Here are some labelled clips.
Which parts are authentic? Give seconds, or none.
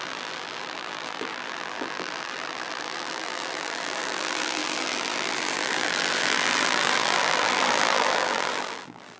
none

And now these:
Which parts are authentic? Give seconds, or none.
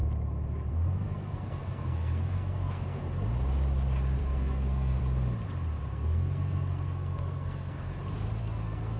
0.0-0.7; 3.0-4.2; 5.0-5.9; 7.9-8.4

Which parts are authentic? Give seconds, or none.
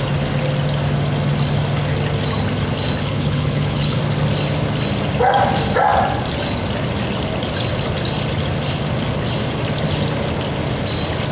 0.0-3.0; 4.0-11.3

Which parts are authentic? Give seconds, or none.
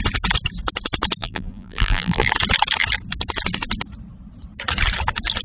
0.0-1.2; 2.3-5.4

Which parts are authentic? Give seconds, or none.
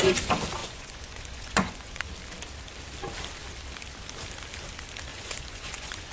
0.0-0.6; 2.1-5.1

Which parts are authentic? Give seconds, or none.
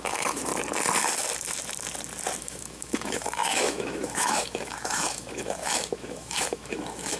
0.5-2.4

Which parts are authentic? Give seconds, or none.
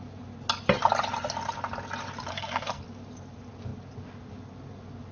0.0-2.3; 2.8-5.1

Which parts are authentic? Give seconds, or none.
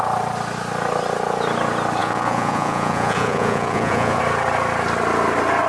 0.0-2.0; 4.2-5.7